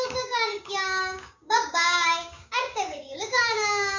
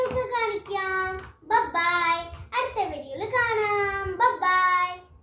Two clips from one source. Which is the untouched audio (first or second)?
second